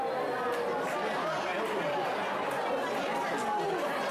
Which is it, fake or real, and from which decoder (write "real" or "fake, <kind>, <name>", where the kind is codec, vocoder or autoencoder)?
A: real